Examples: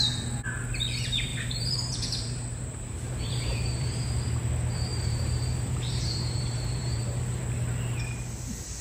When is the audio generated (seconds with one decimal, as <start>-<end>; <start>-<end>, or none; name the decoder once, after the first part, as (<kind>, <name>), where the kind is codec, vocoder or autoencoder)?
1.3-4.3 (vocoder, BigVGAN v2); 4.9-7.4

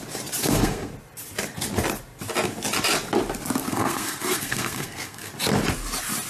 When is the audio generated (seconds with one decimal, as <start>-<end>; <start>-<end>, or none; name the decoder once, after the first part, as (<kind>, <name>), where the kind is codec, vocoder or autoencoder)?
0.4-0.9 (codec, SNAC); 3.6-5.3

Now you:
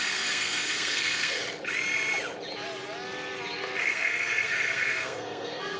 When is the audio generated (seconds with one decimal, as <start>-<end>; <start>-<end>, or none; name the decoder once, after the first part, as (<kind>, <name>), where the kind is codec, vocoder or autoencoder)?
0.0-1.4 (codec, SNAC); 3.8-5.8